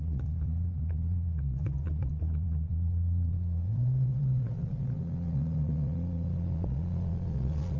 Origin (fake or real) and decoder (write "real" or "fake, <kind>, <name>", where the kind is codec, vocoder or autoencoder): fake, vocoder, Vocos